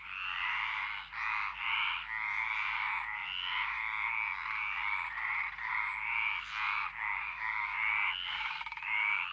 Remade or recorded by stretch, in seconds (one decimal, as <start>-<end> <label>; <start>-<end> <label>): 0.0-8.3 recorded; 8.3-9.3 remade